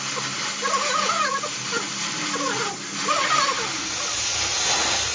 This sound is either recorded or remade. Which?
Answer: recorded